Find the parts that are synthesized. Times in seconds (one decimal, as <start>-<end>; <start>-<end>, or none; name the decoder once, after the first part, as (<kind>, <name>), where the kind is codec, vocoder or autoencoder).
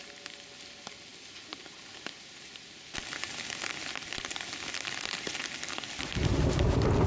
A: none